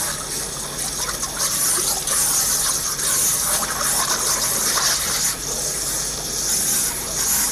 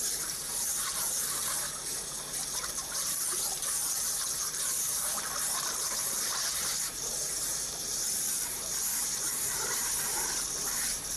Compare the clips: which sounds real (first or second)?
first